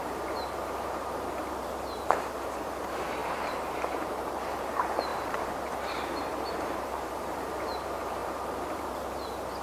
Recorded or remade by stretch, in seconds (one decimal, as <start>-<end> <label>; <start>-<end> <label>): 0.0-8.2 remade; 8.2-8.7 recorded; 8.7-9.6 remade